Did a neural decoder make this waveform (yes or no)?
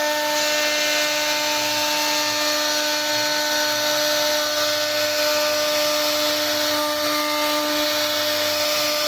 no